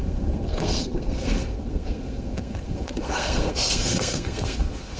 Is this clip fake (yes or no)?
yes